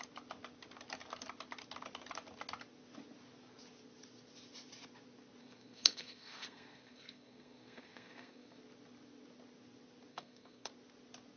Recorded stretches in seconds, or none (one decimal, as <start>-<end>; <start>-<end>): 0.0-5.4; 8.6-10.1; 10.7-11.4